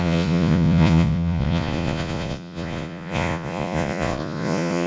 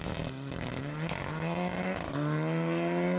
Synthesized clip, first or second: first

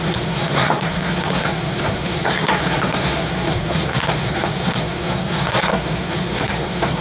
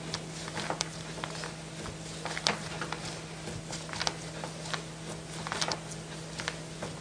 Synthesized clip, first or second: first